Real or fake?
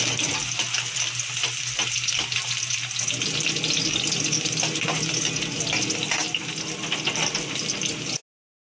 real